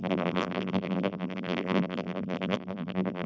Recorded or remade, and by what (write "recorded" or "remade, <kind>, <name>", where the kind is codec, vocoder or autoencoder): remade, vocoder, BigVGAN v2